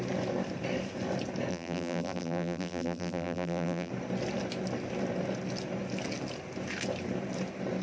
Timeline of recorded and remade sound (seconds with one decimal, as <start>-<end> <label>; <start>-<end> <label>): 0.0-1.5 recorded; 1.5-3.9 remade; 3.9-7.8 recorded